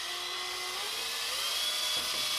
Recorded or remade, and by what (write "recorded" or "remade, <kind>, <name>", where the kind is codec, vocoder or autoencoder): recorded